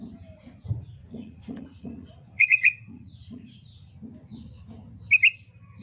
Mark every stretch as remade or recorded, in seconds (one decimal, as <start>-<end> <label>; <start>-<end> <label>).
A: 0.0-1.0 recorded; 1.0-3.9 remade; 3.9-5.8 recorded